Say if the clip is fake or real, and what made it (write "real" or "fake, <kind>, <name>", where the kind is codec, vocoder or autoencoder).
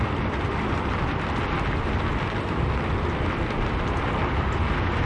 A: real